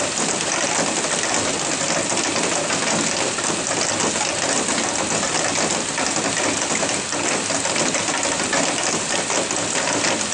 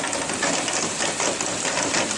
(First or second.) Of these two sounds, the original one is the first